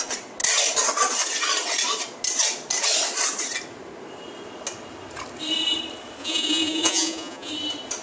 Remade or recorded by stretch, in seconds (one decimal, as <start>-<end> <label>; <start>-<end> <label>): 0.0-6.2 recorded; 6.2-7.5 remade; 7.5-8.0 recorded